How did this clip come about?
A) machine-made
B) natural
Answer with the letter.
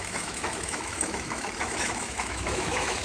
A